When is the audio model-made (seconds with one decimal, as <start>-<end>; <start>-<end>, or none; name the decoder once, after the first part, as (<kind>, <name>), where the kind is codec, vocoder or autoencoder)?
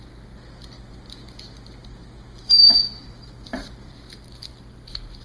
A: 3.0-4.1 (vocoder, BigVGAN v2)